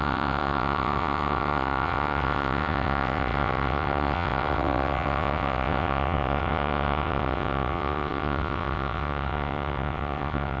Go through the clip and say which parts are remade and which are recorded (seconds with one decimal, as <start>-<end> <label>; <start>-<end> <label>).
0.0-10.6 remade